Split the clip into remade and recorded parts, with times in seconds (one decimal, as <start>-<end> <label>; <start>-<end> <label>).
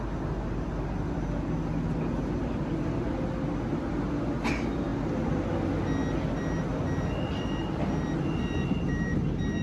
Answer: 0.0-9.6 recorded